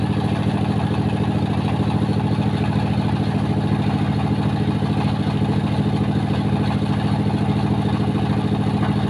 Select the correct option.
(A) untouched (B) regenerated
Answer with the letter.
A